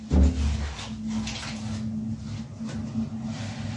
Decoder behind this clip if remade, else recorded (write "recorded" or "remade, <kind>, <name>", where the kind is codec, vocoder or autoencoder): recorded